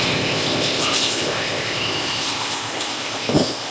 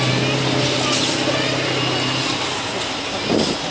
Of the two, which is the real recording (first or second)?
second